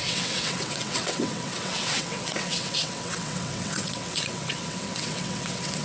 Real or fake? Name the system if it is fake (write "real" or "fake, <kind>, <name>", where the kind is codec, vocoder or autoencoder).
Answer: fake, vocoder, WaveNeXt